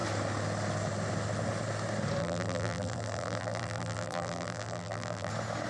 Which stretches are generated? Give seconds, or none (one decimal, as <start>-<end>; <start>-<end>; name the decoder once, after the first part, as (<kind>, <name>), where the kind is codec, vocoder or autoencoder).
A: 2.2-5.3 (vocoder, BigVGAN v2)